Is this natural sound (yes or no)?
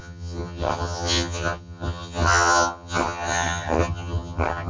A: no